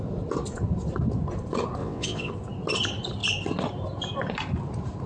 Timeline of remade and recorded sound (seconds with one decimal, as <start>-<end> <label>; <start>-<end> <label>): 0.0-1.8 recorded; 1.8-2.3 remade; 2.3-5.1 recorded